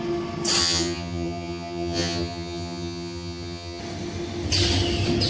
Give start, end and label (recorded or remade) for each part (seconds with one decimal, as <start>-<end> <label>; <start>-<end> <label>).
0.0-0.6 recorded; 0.6-3.8 remade; 3.8-5.3 recorded